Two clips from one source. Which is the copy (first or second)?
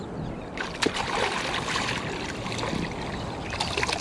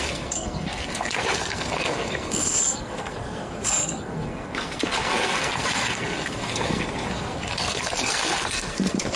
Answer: second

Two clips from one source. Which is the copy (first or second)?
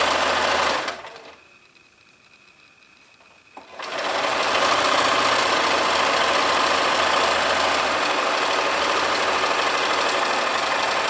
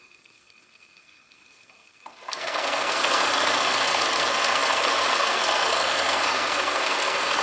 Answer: second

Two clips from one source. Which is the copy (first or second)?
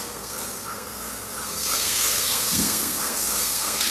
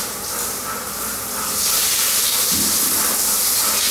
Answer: first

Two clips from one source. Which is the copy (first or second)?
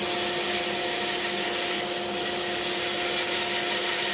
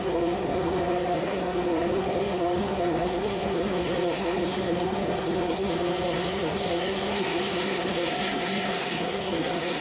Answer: second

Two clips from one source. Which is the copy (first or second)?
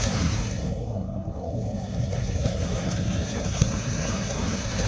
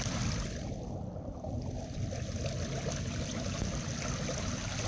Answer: first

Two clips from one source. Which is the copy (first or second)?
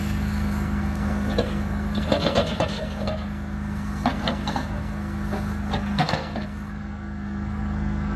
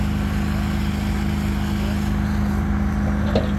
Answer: first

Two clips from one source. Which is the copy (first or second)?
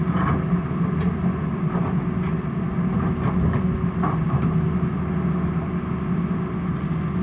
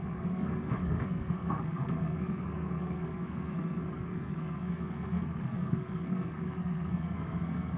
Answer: second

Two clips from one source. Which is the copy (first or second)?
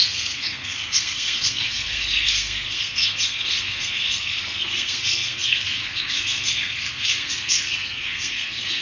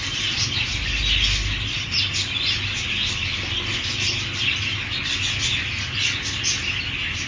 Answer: first